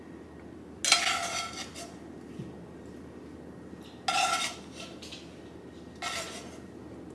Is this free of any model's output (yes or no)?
yes